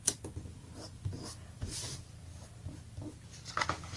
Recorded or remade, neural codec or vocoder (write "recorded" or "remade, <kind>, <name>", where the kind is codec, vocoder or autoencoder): recorded